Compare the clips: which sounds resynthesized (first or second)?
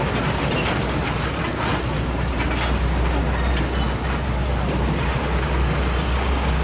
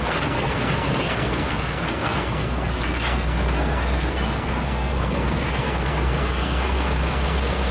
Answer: second